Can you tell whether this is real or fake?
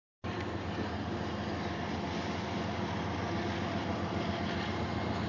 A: real